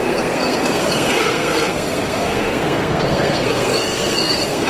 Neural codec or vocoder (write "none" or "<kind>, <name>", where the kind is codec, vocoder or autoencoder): codec, SNAC